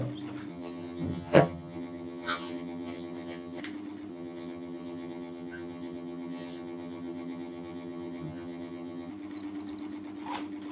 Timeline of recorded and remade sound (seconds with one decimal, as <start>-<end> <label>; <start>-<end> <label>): 0.0-0.5 recorded; 0.5-3.6 remade; 3.6-4.1 recorded; 4.1-9.1 remade; 9.1-10.7 recorded